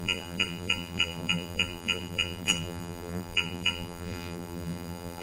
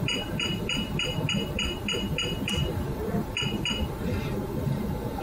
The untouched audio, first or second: second